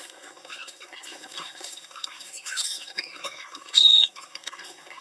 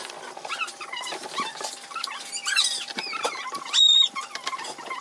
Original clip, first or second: second